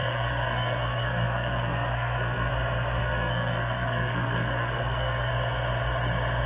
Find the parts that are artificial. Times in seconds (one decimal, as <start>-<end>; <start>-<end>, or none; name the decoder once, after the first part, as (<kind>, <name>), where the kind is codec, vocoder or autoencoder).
0.0-2.5 (codec, SNAC); 3.0-5.3